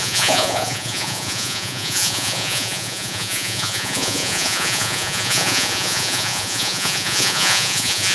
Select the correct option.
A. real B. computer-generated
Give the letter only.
B